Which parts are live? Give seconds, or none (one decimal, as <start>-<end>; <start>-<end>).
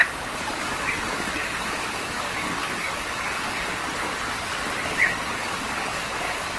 3.8-4.9